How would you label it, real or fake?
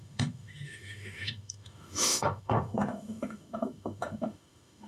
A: fake